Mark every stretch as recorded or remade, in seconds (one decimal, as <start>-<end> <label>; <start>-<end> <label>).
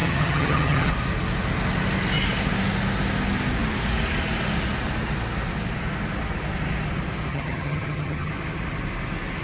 0.0-0.9 remade; 0.9-7.3 recorded; 7.3-8.3 remade; 8.3-9.4 recorded